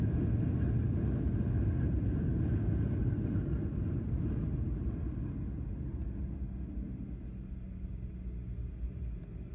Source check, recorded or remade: recorded